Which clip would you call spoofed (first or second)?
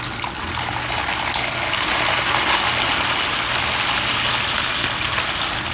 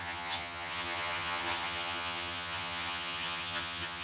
second